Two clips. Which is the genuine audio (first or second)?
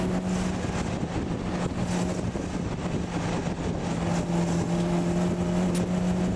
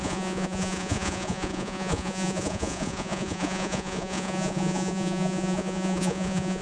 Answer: first